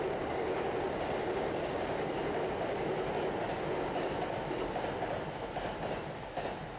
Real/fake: real